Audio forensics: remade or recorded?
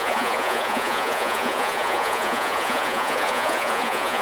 remade